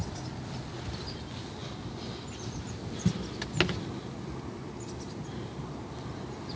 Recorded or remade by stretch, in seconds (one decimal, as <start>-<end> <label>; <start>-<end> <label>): 0.0-6.6 recorded